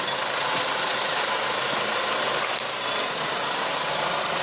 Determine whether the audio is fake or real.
real